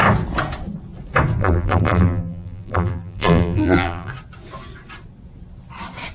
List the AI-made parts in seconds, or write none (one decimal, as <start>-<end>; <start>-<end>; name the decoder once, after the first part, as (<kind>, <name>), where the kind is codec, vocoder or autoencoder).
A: 1.4-4.1 (vocoder, BigVGAN v2)